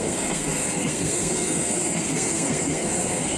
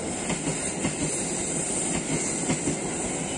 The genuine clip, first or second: second